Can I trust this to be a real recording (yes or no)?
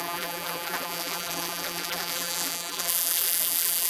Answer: no